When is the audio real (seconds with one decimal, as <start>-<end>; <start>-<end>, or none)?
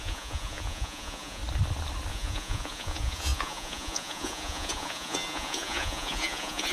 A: 1.4-2.1